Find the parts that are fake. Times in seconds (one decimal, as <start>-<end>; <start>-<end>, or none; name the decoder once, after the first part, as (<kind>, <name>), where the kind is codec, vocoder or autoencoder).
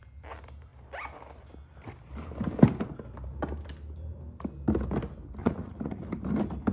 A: 5.4-6.0 (vocoder, Vocos)